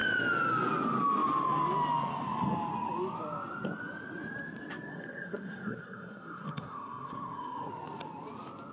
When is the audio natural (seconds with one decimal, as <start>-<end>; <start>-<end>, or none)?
0.0-4.9; 7.7-8.7